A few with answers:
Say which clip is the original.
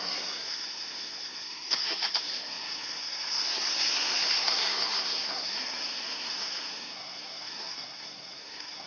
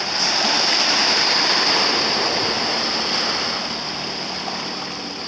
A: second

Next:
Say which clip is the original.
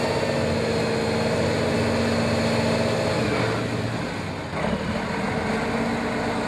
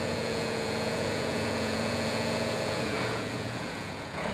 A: first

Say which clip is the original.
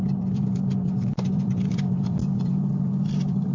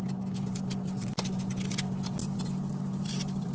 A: second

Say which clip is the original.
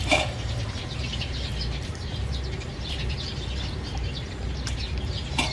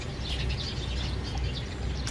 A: second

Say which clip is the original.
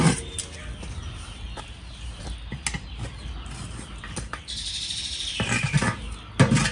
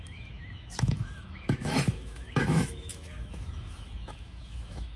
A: first